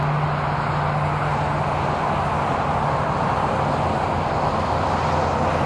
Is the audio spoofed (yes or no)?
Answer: no